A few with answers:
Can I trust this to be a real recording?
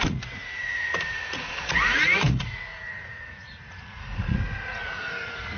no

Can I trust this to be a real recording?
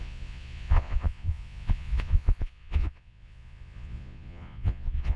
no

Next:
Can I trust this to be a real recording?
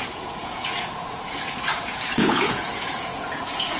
no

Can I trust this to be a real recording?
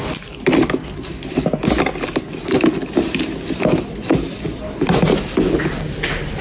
yes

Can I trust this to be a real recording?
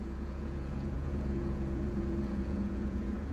no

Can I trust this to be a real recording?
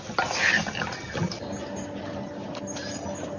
yes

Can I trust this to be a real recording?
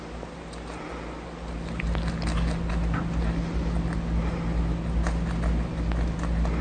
yes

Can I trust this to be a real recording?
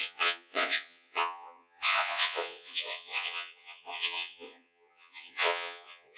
no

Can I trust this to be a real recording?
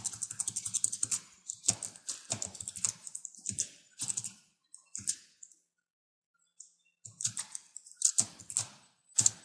yes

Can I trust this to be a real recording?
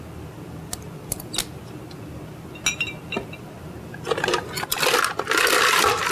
yes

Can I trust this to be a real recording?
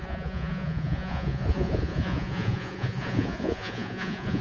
no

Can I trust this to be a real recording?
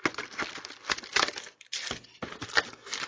yes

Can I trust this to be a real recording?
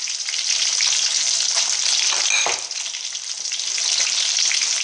yes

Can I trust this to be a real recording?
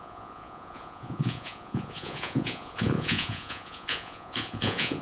no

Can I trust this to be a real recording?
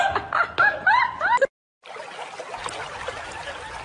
yes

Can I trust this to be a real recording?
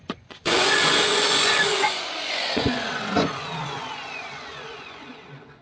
no